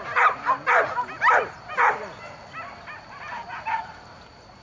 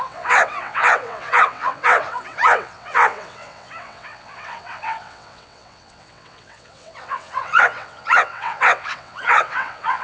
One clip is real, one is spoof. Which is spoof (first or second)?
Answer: second